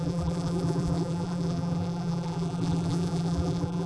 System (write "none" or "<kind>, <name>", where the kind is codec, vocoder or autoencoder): vocoder, BigVGAN v2